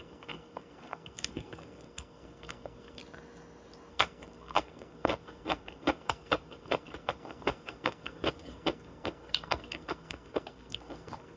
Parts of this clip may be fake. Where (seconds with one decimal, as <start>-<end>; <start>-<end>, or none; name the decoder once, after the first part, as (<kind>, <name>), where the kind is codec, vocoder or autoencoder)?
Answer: 0.0-3.0 (codec, SNAC); 3.9-11.4